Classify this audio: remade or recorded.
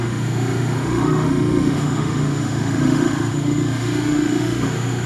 remade